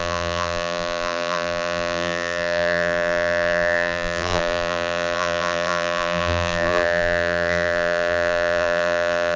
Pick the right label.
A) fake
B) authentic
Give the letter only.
A